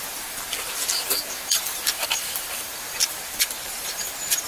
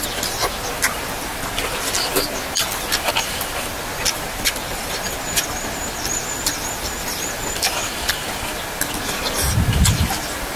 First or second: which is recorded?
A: second